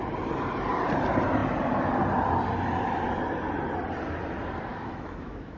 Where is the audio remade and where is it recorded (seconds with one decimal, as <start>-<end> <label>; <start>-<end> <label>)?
0.0-4.7 recorded; 4.7-5.6 remade